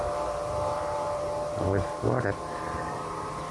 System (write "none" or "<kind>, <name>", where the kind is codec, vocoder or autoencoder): vocoder, BigVGAN v2